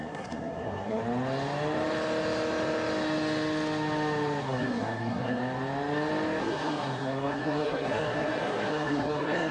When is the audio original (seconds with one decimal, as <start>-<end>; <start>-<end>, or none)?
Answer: 1.0-4.4; 5.4-6.4